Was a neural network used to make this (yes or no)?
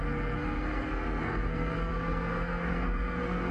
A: yes